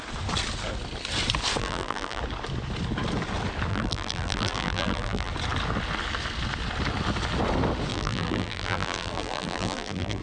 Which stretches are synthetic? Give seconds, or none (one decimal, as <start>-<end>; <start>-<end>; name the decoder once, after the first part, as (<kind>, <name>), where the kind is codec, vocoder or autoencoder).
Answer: 1.6-2.2 (vocoder, BigVGAN v2); 3.7-5.3; 7.9-10.2